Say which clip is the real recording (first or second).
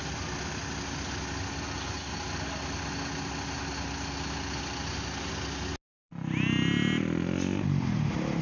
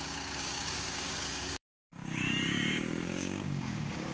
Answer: first